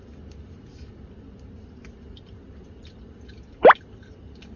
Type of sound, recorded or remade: recorded